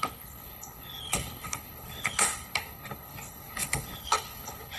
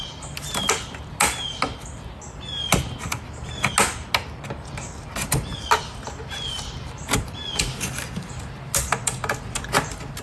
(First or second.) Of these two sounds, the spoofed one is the first